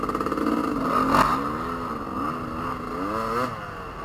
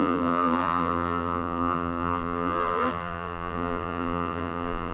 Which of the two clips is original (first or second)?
first